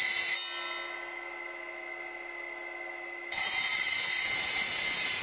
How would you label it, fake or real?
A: real